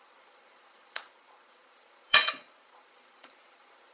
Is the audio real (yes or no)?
no